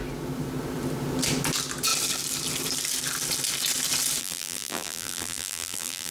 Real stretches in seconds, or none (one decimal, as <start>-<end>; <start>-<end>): 0.0-4.2